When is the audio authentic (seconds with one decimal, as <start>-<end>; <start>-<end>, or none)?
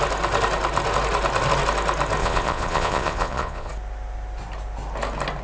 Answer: 0.0-2.2; 3.7-5.4